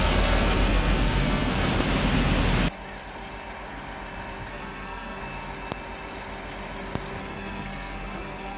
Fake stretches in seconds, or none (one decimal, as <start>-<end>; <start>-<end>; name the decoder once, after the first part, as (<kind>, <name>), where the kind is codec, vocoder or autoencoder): 0.0-1.7 (codec, SNAC); 4.5-5.2; 7.2-8.6